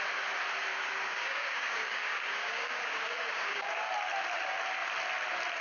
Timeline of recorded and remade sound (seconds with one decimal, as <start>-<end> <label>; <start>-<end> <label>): 0.0-0.7 recorded; 0.7-3.9 remade; 3.9-5.6 recorded